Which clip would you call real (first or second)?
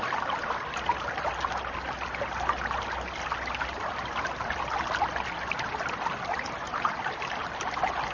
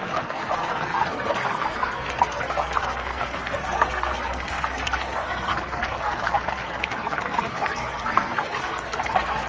first